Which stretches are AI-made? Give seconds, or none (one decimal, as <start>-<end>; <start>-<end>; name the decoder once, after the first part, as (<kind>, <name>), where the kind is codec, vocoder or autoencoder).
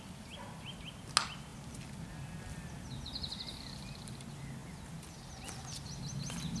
none